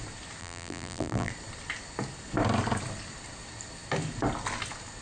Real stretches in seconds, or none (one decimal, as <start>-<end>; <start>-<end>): 0.0-0.4; 1.3-5.0